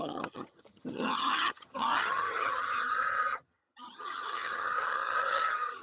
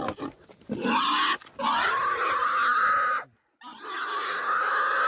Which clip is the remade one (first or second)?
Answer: first